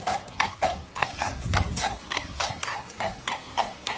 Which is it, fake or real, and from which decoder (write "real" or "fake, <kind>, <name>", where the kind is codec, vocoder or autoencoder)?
fake, codec, SNAC